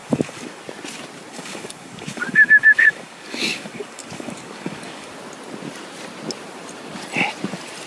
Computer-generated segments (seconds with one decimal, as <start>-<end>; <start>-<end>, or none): 0.0-0.6; 1.3-5.1